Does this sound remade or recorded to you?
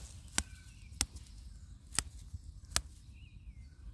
recorded